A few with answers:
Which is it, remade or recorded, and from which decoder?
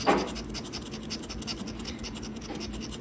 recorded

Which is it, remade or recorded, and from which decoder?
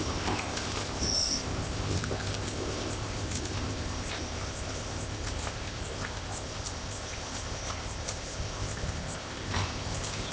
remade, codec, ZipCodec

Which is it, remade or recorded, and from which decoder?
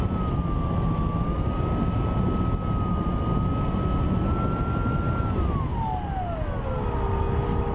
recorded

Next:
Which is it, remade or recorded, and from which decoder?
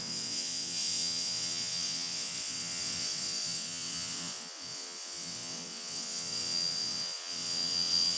remade, vocoder, WaveNeXt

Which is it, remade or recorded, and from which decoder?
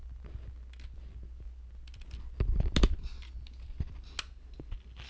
recorded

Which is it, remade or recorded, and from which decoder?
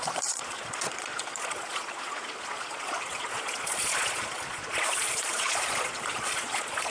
remade, vocoder, Vocos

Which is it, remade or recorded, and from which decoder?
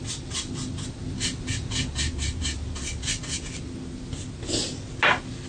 recorded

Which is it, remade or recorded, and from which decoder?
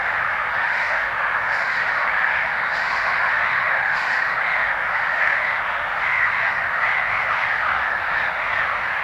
remade, autoencoder, DAC-VAE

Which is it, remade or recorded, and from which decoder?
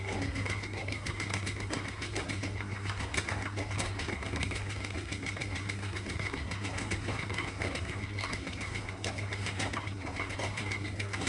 remade, codec, SNAC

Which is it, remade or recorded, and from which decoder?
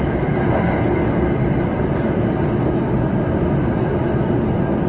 recorded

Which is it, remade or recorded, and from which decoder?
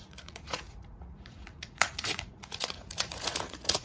remade, vocoder, Vocos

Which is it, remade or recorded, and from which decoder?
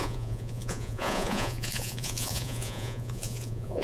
remade, vocoder, Vocos